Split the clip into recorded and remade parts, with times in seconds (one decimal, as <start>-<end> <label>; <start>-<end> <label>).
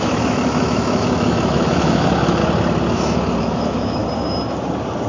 0.0-2.4 remade; 2.4-3.4 recorded; 3.4-4.0 remade; 4.0-5.1 recorded